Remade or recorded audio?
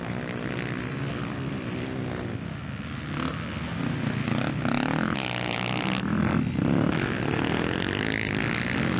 recorded